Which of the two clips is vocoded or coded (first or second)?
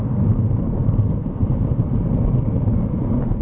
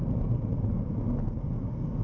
first